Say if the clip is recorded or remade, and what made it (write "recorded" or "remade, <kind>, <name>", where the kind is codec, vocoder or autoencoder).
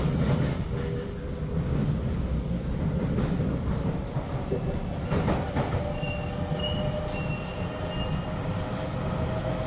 recorded